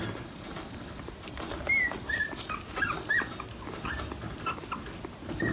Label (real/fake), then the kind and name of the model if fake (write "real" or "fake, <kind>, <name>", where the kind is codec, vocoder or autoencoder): real